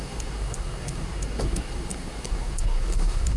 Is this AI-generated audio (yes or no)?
yes